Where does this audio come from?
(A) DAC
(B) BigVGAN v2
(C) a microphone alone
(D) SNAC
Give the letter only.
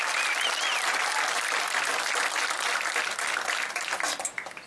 C